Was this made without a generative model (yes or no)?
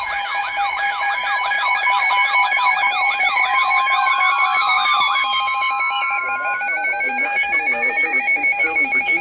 no